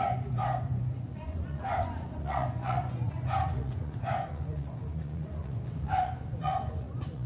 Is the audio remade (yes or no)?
yes